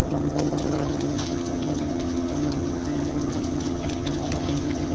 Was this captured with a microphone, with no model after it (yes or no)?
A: no